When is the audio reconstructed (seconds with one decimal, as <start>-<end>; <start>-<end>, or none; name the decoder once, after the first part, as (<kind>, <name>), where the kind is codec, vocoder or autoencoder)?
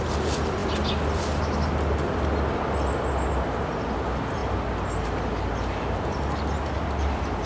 none